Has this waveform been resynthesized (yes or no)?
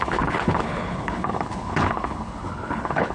yes